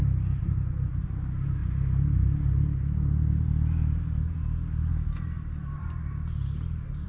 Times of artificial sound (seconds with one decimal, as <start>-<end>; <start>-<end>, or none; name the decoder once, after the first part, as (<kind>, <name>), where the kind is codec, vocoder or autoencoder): 0.4-1.0 (vocoder, BigVGAN v2)